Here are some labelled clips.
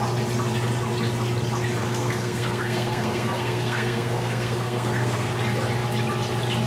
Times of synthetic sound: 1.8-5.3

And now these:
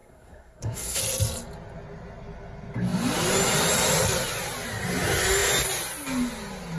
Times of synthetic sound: 0.0-1.0

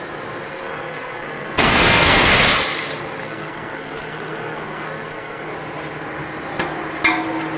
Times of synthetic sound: 0.5-2.3; 3.2-5.5